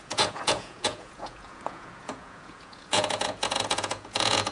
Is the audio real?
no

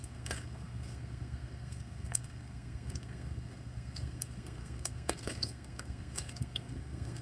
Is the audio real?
no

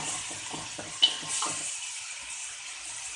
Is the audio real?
yes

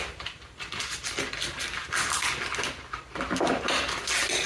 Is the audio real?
yes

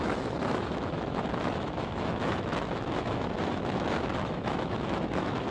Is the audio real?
no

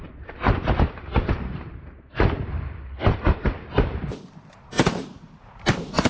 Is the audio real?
no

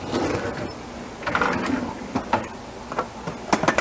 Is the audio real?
yes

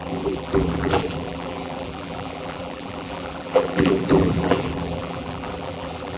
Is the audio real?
no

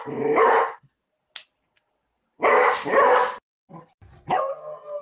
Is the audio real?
yes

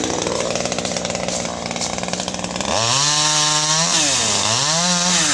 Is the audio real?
yes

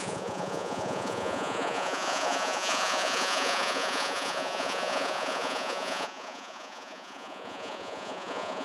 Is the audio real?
no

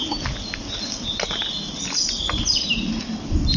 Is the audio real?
yes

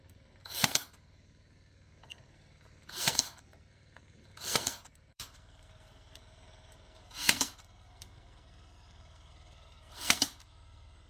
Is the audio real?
no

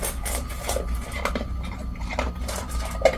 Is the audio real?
no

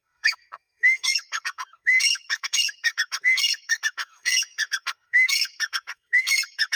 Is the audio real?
no